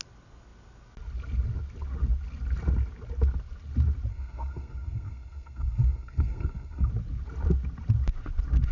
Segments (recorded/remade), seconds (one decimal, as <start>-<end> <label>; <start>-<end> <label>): 0.0-4.1 recorded; 4.1-6.9 remade; 6.9-8.7 recorded